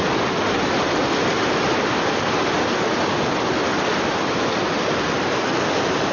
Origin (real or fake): real